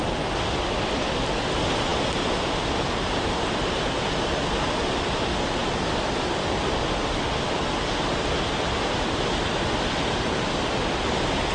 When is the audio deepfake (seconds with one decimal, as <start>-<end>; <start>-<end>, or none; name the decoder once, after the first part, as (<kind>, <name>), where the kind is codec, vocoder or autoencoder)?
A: none